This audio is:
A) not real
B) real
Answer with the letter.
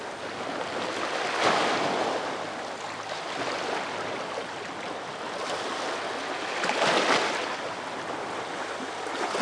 B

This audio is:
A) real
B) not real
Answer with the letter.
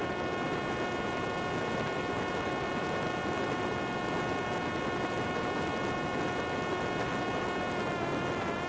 A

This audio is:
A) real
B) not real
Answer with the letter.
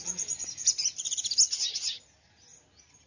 A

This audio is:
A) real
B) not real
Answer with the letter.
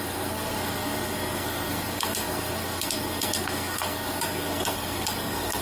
B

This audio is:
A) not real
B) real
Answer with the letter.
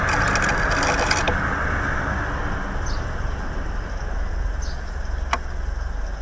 B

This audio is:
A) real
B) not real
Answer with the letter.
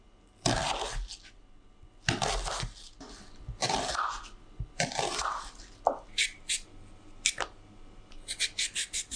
A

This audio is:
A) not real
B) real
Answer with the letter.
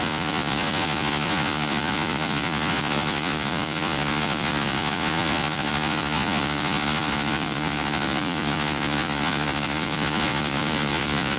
A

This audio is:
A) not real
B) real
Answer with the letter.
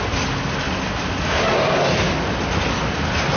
B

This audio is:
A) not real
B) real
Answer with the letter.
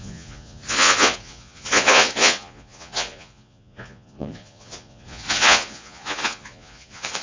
A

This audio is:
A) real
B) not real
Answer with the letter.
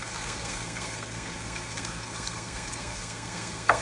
B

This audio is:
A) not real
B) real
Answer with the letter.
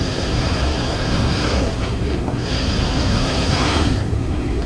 A